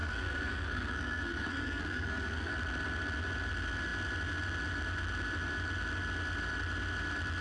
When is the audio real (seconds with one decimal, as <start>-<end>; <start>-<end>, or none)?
2.5-7.4